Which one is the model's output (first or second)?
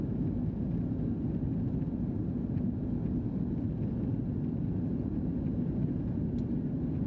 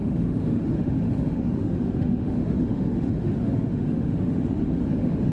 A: second